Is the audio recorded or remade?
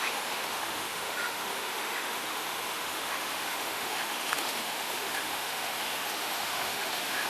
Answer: remade